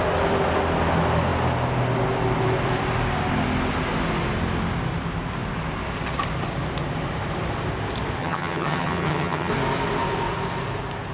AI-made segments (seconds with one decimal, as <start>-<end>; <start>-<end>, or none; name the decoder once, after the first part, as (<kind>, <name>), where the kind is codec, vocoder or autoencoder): 8.2-9.5 (vocoder, HiFi-GAN)